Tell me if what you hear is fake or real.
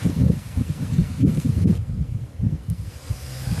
fake